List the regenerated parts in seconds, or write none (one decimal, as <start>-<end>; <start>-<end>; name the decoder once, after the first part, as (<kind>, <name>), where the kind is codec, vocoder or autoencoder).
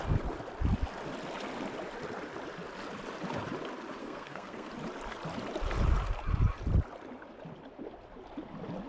4.0-4.7 (codec, SNAC)